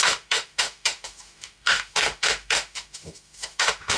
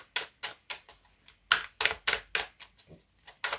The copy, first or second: first